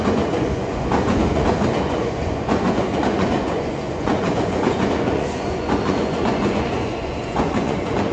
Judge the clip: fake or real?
fake